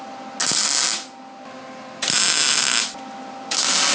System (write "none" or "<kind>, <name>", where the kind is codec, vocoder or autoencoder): none